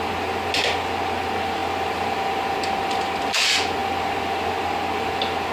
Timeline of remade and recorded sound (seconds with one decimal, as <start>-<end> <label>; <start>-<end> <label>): 0.0-5.5 recorded